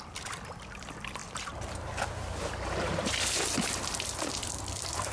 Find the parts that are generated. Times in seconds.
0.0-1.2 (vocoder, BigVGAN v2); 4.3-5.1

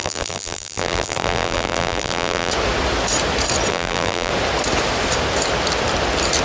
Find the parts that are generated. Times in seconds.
0.0-2.5 (vocoder, BigVGAN v2); 3.7-4.3

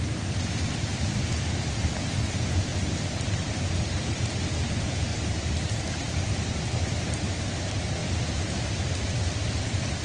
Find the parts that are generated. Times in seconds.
0.0-2.7 (vocoder, BigVGAN v2); 3.4-5.1; 5.9-8.0; 9.5-10.0